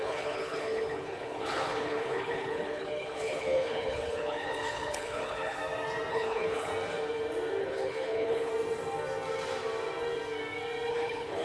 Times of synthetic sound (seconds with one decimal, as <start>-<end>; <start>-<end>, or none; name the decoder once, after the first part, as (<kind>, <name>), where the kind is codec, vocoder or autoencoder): 0.0-5.6 (codec, HILCodec); 6.1-6.7; 7.6-8.5; 10.9-11.4